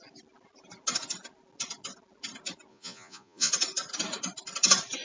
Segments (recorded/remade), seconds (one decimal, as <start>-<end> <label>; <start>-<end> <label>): 0.0-2.7 recorded; 2.7-3.5 remade; 3.5-5.0 recorded